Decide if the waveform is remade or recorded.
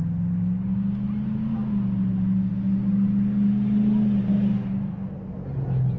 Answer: recorded